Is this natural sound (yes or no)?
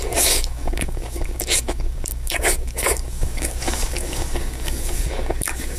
no